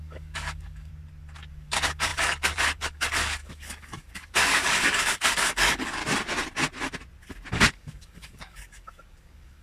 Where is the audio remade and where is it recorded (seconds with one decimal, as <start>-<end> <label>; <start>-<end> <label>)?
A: 0.0-0.9 remade; 0.9-1.5 recorded; 1.5-6.0 remade; 6.0-7.5 recorded; 7.5-9.6 remade